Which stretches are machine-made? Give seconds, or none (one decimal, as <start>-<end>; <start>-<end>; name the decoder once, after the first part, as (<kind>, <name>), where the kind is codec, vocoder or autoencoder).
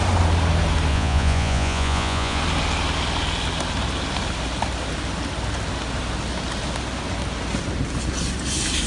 0.9-2.4 (vocoder, Vocos)